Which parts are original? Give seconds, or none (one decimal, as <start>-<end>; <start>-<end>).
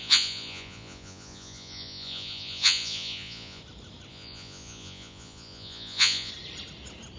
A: 3.6-4.1; 6.3-7.2